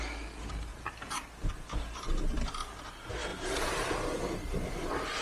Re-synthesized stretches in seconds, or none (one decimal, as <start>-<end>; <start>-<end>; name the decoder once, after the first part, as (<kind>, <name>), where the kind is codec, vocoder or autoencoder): 0.7-1.4 (vocoder, BigVGAN v2); 3.3-5.2